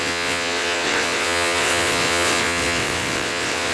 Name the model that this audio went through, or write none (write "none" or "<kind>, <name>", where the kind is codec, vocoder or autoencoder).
vocoder, WaveNeXt